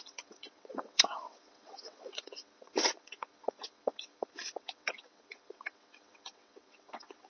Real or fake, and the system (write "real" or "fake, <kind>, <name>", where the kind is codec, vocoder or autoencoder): fake, vocoder, WaveNeXt